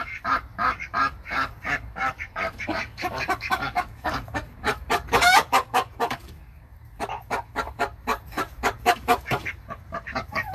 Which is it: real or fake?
fake